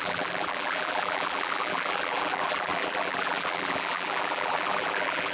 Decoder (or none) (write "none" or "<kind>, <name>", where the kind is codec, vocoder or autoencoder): vocoder, BigVGAN v2